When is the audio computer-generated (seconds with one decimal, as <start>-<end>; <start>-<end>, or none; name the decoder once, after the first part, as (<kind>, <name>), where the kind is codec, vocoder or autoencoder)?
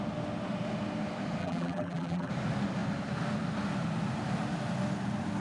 1.4-2.3 (vocoder, BigVGAN v2)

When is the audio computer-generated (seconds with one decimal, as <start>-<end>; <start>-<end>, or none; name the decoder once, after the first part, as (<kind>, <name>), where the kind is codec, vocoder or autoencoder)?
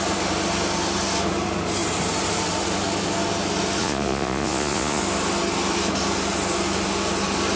3.8-5.0 (vocoder, Vocos)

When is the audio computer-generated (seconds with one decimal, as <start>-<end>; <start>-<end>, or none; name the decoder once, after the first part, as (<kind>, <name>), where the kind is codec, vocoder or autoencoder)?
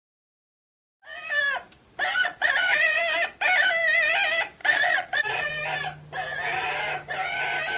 2.1-3.0 (vocoder, Vocos); 4.6-5.5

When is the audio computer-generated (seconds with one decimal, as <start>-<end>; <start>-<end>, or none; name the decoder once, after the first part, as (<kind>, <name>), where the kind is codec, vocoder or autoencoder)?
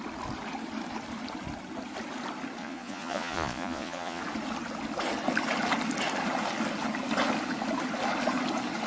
2.6-4.2 (vocoder, Vocos)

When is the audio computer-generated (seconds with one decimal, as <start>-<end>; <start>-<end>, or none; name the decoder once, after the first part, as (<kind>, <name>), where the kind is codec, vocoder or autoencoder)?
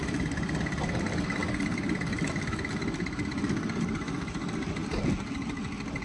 0.0-1.4 (vocoder, BigVGAN v2); 2.8-4.8